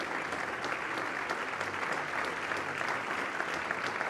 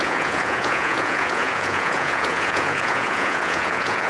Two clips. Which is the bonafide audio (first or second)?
first